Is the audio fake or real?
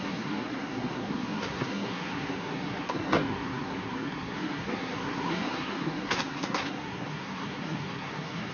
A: fake